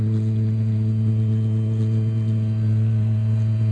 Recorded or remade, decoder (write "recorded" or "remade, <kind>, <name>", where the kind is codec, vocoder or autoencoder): recorded